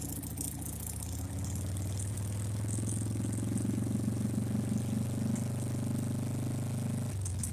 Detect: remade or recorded recorded